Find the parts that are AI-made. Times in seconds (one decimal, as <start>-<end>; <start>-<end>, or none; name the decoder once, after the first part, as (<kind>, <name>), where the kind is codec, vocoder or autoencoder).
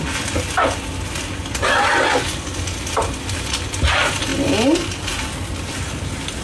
none